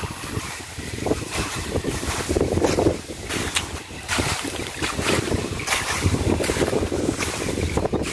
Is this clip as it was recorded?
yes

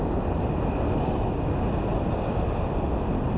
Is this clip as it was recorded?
yes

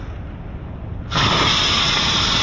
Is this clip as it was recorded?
yes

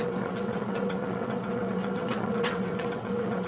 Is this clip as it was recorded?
no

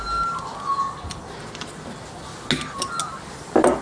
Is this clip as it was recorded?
yes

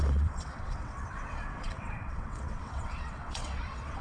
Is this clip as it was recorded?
no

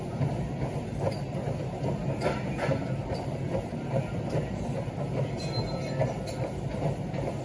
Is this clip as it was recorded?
yes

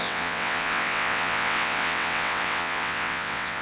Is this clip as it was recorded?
no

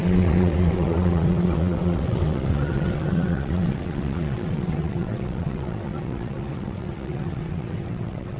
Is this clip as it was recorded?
no